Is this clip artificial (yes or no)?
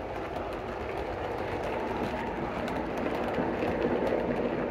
no